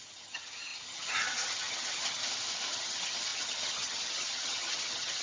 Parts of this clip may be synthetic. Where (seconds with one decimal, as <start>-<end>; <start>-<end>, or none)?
0.0-2.2; 2.7-5.2